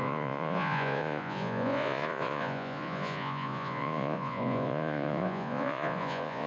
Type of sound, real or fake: fake